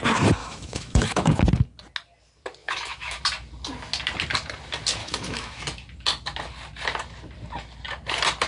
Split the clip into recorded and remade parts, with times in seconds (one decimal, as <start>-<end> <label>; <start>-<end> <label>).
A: 0.0-0.4 recorded; 0.4-1.4 remade; 1.4-2.6 recorded; 2.6-3.2 remade; 3.2-5.0 recorded; 5.0-5.6 remade; 5.6-8.5 recorded